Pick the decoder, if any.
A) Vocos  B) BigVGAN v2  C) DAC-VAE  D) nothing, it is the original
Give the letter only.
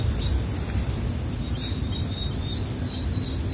D